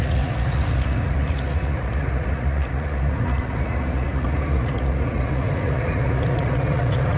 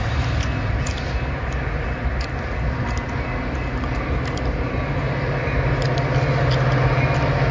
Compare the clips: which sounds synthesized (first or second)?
first